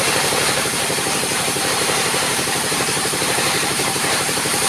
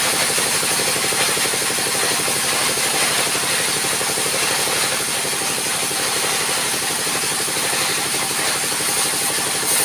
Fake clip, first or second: first